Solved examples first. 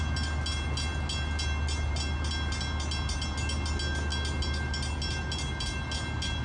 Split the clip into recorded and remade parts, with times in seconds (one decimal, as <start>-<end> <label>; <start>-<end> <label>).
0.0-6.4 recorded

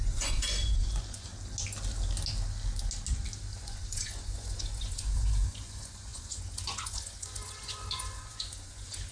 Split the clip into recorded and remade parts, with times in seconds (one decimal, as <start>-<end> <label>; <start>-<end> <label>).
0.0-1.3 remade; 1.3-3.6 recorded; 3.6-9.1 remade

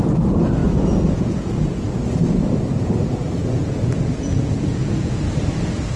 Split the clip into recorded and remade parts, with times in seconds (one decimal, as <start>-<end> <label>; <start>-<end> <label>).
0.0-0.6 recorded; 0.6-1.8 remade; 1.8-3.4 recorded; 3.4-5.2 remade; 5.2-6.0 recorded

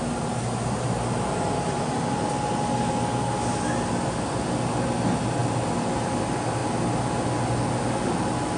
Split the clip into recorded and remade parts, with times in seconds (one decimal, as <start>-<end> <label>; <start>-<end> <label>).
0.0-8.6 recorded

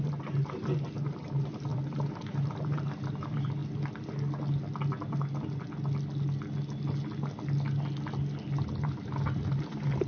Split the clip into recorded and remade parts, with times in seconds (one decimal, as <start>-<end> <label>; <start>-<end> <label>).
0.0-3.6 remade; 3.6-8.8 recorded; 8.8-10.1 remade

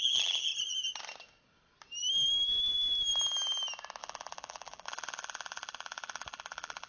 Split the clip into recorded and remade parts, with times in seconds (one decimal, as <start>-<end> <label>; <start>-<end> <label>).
0.0-0.5 remade; 0.5-4.0 recorded; 4.0-6.9 remade

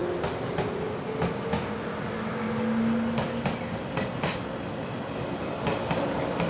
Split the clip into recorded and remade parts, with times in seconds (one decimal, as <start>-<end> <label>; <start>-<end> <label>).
0.0-6.5 recorded